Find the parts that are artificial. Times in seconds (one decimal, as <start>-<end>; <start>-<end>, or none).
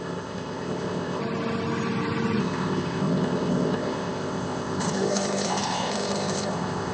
0.0-1.2; 2.4-6.9